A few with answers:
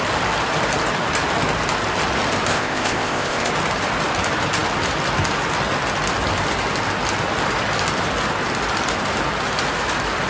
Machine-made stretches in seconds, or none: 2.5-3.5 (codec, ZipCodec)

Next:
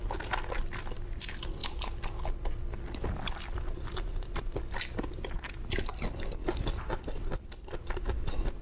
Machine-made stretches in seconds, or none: none